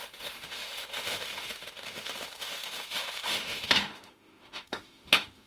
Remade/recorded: remade